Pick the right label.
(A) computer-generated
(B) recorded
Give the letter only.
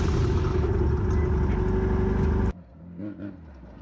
B